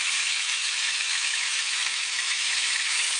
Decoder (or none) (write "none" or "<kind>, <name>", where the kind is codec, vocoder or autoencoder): autoencoder, DAC-VAE